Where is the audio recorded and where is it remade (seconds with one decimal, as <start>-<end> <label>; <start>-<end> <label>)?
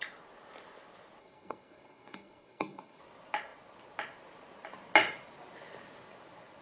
0.0-1.2 recorded; 1.2-3.0 remade; 3.0-6.6 recorded